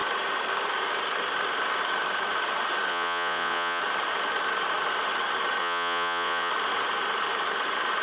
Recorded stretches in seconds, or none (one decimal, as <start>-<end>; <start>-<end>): 0.0-2.9; 3.8-5.6; 6.5-8.0